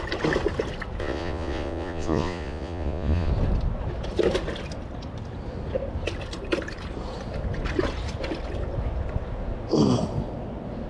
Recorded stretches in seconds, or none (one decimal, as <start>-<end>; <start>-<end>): 0.0-1.0; 3.3-10.9

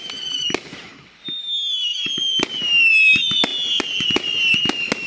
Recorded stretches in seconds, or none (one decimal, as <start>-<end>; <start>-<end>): 0.0-5.1

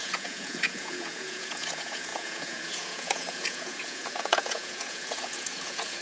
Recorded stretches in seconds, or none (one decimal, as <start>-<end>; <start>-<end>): none

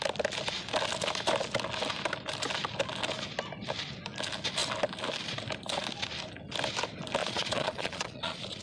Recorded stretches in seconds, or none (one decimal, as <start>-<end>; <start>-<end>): 0.0-7.2

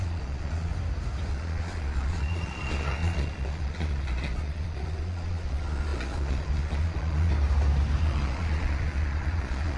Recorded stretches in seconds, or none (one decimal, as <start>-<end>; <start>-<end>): 0.7-1.3; 7.3-8.0

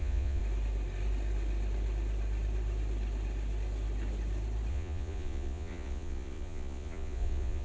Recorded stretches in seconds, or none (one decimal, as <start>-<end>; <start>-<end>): 0.4-4.7

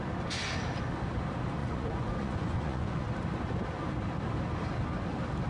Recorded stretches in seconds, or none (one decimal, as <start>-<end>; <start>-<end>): 0.0-1.6; 3.1-5.5